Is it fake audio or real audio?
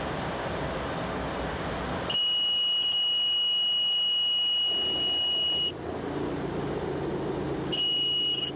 real